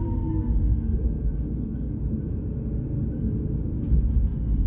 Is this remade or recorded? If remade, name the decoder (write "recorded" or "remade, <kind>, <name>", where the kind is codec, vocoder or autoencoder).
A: recorded